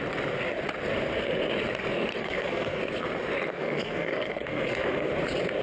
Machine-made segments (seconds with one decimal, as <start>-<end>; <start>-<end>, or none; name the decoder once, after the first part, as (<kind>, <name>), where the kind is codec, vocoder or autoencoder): 2.1-2.8 (codec, SNAC); 3.5-5.1